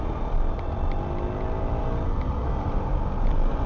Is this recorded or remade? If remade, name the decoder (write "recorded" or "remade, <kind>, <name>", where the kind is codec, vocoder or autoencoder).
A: recorded